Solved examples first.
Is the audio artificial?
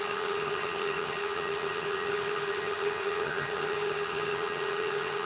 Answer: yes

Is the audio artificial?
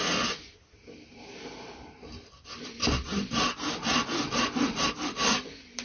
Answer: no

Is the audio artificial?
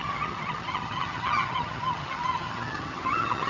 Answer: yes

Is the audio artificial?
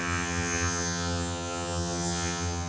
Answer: yes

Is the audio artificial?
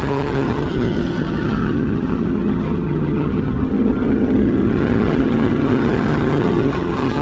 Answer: yes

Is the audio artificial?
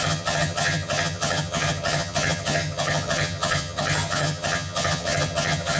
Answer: yes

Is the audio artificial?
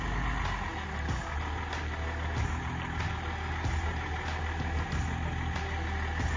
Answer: no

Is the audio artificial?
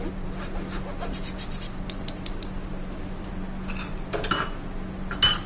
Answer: no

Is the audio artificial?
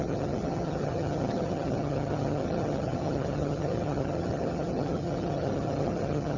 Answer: yes